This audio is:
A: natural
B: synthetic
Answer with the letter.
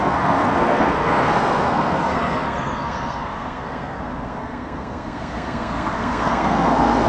B